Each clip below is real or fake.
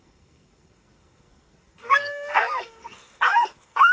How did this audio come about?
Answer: fake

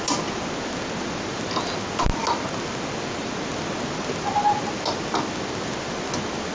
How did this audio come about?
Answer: real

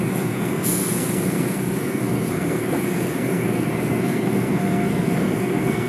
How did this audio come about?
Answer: fake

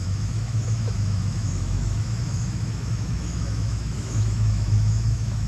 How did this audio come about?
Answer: fake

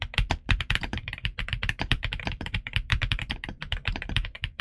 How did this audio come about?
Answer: fake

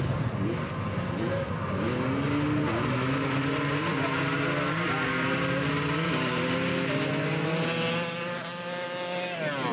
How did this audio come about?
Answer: real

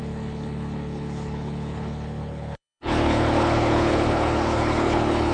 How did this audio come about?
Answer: fake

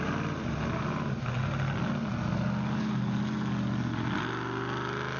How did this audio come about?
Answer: real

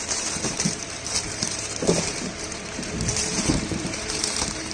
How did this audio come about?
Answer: fake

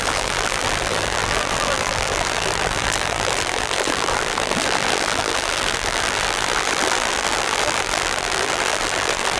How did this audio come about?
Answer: fake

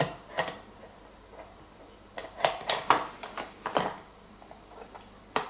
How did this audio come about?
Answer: real